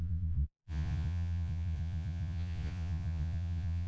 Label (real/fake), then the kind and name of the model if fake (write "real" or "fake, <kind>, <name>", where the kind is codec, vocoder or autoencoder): fake, vocoder, Vocos